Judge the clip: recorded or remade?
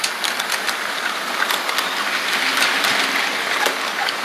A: recorded